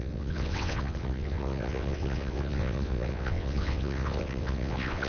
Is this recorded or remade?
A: remade